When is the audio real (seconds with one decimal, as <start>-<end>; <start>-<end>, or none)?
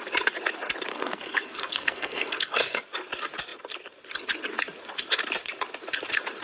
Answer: 0.0-0.9; 2.8-6.4